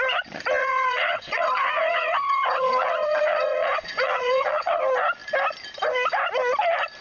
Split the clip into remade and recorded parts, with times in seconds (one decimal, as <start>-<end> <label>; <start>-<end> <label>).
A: 0.0-0.6 recorded; 0.6-4.8 remade; 4.8-7.0 recorded